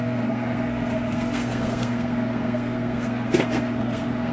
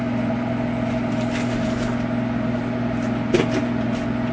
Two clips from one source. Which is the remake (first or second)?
first